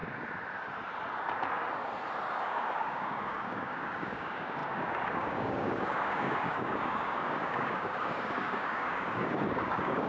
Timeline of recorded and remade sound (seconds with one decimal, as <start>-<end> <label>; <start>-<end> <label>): 0.0-2.3 recorded; 2.3-10.1 remade